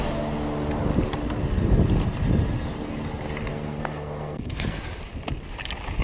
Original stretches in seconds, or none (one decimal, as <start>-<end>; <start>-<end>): 0.0-3.5; 4.8-6.0